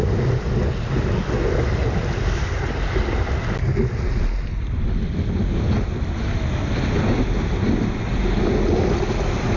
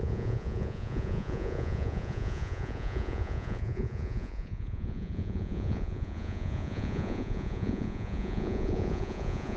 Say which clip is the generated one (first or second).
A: second